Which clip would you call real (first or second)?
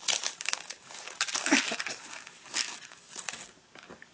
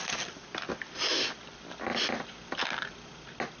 second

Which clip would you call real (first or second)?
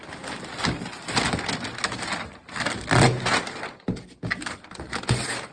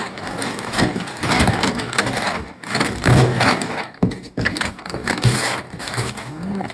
first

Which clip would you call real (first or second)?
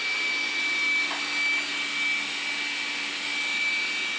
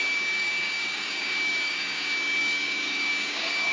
first